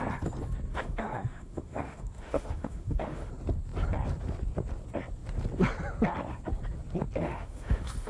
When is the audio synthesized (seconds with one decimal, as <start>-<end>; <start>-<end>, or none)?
0.7-3.3; 7.2-8.1